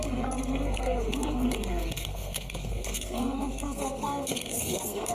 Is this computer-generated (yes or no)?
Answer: yes